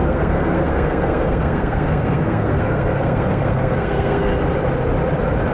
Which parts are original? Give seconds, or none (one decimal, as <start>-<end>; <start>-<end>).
4.3-5.5